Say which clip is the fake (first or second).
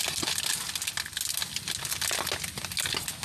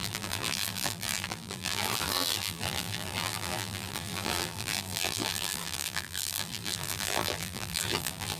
second